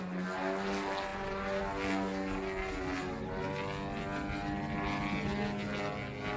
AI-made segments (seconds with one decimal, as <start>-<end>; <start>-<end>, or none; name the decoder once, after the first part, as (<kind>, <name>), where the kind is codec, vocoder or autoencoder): none